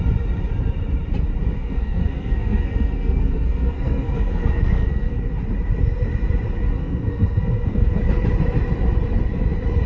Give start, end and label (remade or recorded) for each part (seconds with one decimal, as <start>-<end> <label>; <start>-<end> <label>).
0.0-1.6 recorded; 1.6-5.2 remade; 5.2-6.8 recorded; 6.8-8.0 remade; 8.0-9.9 recorded